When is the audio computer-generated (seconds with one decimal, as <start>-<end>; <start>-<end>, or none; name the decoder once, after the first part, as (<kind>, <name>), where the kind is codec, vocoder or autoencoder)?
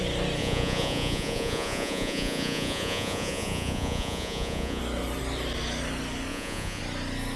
0.4-4.8 (vocoder, Vocos); 6.3-6.8